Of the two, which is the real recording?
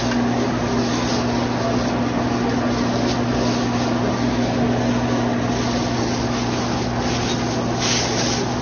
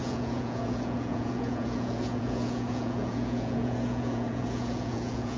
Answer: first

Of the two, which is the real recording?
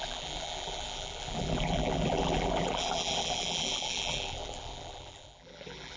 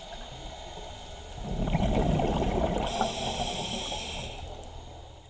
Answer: second